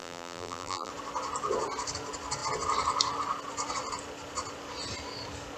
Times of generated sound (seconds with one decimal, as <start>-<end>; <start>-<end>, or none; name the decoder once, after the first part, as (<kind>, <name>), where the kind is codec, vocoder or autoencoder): 0.0-0.9 (vocoder, BigVGAN v2)